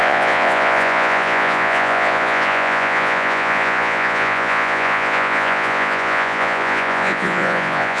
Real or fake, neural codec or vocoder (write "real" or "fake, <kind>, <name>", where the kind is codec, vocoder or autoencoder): fake, vocoder, Vocos